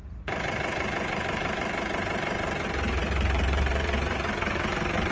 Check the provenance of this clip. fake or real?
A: fake